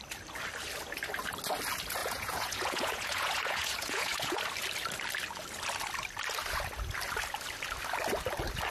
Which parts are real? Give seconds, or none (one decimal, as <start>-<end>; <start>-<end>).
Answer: 0.0-2.0; 4.4-8.7